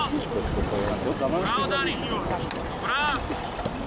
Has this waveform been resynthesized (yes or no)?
no